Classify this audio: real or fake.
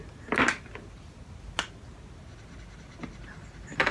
real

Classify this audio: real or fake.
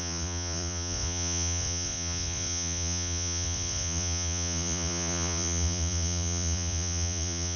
fake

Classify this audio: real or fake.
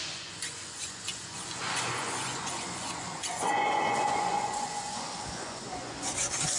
fake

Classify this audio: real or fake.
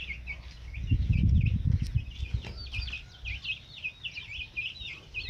real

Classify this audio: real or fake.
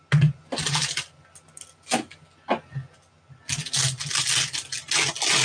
real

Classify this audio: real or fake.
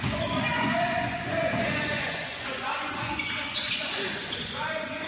fake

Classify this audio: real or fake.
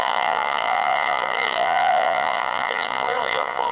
fake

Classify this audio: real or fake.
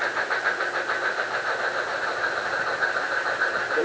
real